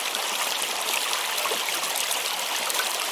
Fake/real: real